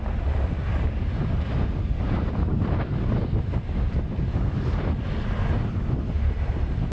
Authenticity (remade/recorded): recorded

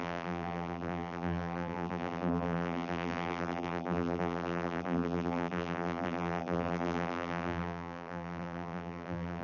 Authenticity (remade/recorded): remade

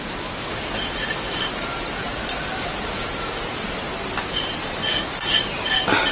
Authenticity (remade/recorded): recorded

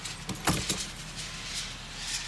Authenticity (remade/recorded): recorded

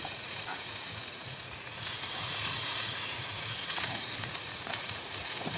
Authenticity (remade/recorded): remade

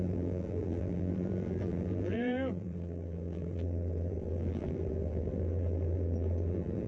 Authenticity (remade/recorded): remade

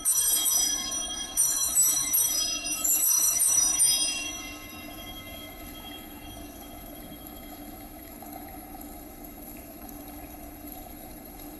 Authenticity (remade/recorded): remade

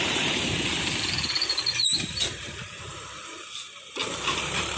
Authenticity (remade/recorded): remade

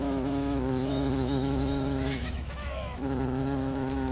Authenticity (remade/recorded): remade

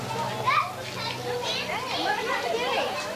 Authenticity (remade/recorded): recorded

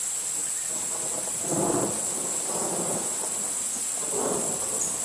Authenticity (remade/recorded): recorded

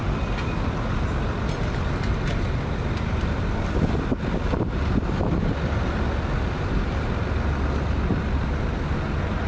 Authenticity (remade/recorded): recorded